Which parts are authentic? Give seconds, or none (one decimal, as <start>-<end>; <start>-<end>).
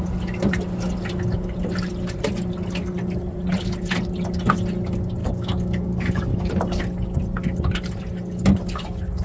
0.0-5.2; 6.5-9.2